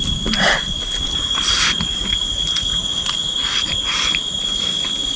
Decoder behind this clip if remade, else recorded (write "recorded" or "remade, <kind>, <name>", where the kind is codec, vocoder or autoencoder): recorded